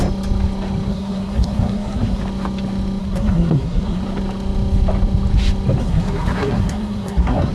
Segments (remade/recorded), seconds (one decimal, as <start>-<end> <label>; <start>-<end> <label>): 0.0-0.9 recorded; 0.9-2.2 remade; 2.2-3.0 recorded; 3.0-4.0 remade; 4.0-5.8 recorded; 5.8-7.5 remade